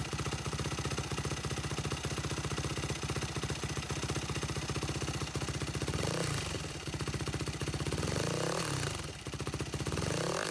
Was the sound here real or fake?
real